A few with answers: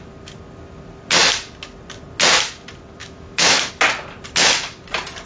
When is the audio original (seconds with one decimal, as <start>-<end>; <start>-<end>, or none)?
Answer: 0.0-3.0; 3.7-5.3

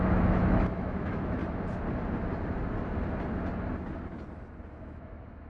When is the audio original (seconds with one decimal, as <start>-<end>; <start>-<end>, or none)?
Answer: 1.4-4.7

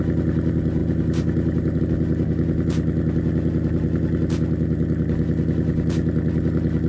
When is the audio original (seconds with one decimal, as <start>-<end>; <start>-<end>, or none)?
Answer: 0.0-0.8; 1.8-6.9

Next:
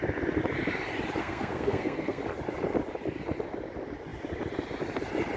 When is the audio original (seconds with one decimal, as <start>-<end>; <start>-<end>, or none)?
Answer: 0.0-1.2; 2.2-5.4

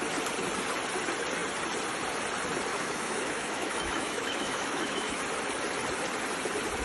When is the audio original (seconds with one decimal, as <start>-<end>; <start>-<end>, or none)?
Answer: 0.0-2.7; 5.2-6.8

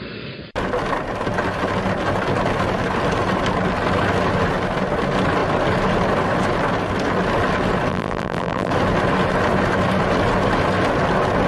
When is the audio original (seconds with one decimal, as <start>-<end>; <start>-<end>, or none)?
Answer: 0.0-7.9; 8.7-11.5

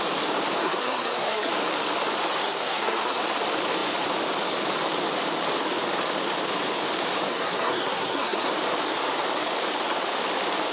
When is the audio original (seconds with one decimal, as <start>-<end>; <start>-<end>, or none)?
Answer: 0.0-0.6; 1.5-2.4; 3.2-7.3; 8.5-10.7

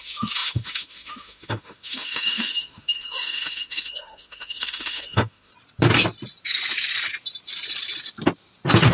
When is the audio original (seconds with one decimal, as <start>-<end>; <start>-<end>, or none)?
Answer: 5.5-8.9